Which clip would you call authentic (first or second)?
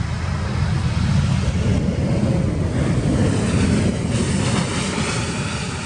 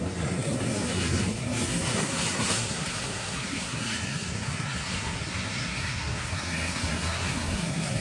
first